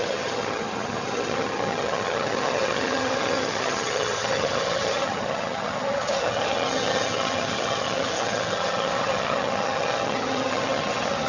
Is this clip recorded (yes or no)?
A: no